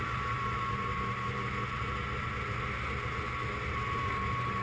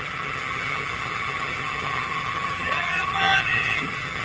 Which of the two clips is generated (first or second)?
second